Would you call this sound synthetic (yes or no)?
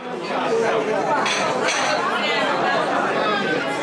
no